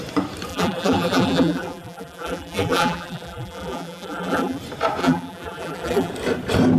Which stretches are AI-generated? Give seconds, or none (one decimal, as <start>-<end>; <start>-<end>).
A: 0.5-4.6; 5.0-6.1